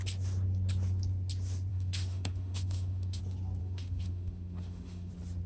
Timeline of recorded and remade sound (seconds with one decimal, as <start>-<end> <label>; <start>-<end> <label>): 0.0-1.7 recorded; 1.7-3.2 remade; 3.2-3.6 recorded; 3.6-5.1 remade; 5.1-5.5 recorded